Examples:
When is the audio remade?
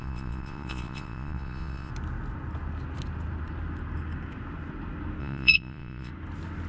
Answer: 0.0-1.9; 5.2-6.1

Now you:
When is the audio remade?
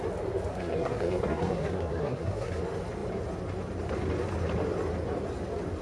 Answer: 0.5-2.6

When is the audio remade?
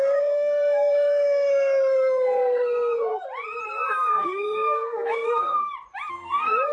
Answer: 0.0-3.1; 3.9-5.6; 6.1-6.7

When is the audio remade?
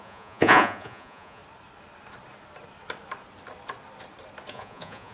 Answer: 0.0-1.4; 4.5-5.1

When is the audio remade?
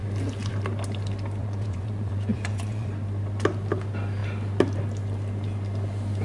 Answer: 1.4-2.9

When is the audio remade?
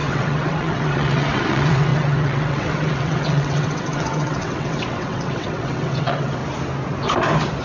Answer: 0.0-6.4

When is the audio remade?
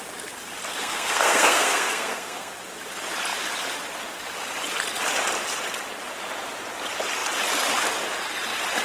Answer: 0.8-2.5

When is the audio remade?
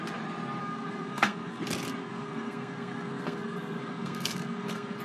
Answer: 0.6-1.6; 2.0-5.0